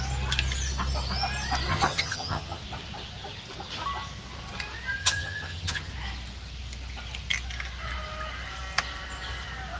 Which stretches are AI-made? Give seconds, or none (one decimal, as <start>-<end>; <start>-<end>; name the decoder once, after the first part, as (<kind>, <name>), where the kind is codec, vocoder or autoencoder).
1.7-2.6 (vocoder, HiFi-GAN); 5.0-5.9